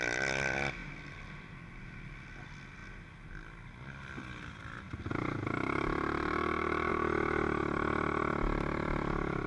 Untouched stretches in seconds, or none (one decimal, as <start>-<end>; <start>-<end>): 0.0-9.5